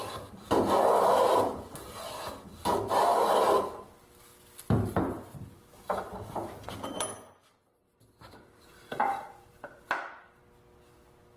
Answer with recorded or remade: recorded